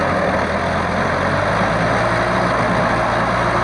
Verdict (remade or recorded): recorded